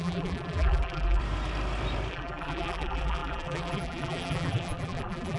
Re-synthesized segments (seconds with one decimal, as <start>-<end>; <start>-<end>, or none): 0.0-1.2; 2.1-5.4